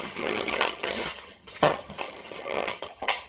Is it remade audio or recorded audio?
remade